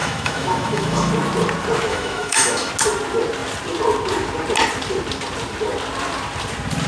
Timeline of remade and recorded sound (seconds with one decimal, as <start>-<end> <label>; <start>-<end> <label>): 0.0-1.1 remade; 1.1-1.9 recorded; 1.9-2.7 remade; 2.7-6.9 recorded